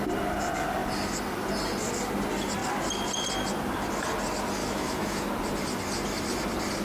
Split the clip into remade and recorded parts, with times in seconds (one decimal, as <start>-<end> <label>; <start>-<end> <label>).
0.0-4.6 recorded; 4.6-5.3 remade; 5.3-6.8 recorded